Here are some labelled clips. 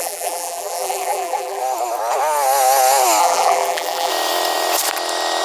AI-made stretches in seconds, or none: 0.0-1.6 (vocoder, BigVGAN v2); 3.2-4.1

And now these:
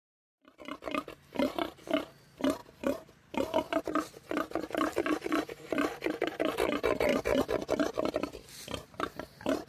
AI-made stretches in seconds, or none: none

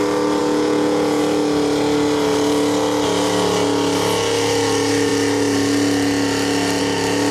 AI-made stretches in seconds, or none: 0.4-1.2 (vocoder, Vocos)